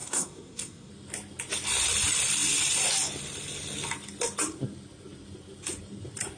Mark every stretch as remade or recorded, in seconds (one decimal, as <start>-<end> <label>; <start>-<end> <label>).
0.0-0.9 remade; 0.9-6.4 recorded

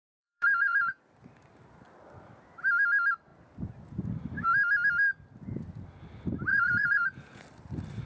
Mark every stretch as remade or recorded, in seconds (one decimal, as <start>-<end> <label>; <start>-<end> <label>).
0.0-1.0 remade; 1.0-6.5 recorded; 6.5-7.4 remade; 7.4-8.1 recorded

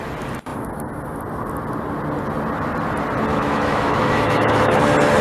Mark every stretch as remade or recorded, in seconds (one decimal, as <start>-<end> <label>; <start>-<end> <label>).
0.0-3.3 recorded; 3.3-4.8 remade; 4.8-5.2 recorded